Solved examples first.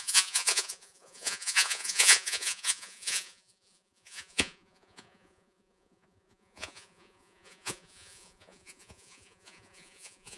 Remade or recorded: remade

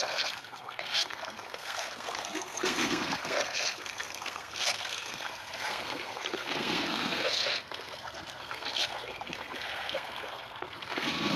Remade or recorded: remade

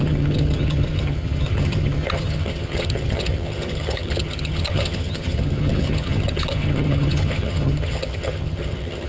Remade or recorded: remade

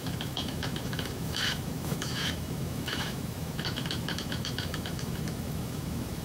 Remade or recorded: remade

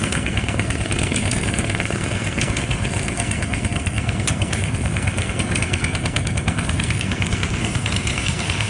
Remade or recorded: remade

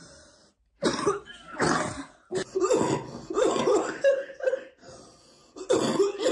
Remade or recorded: recorded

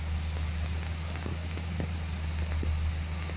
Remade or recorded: recorded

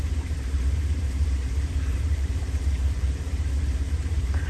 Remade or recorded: remade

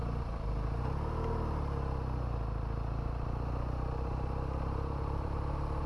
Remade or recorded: recorded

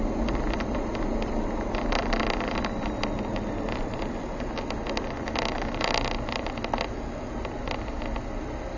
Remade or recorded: recorded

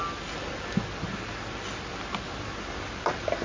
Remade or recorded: recorded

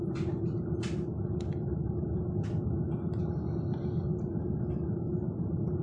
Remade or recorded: recorded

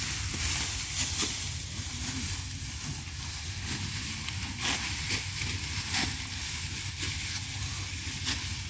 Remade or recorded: recorded